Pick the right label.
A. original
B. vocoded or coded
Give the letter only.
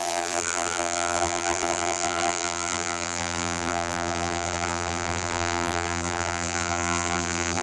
B